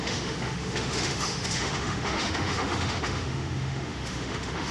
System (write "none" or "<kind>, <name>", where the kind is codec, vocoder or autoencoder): autoencoder, DAC-VAE